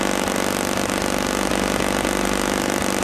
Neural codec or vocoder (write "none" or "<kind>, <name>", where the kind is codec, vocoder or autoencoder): none